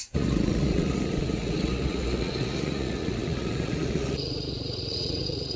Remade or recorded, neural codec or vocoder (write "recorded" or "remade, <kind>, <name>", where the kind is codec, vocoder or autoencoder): remade, vocoder, Vocos